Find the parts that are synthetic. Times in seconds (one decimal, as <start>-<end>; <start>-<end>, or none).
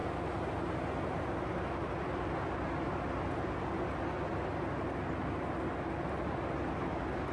none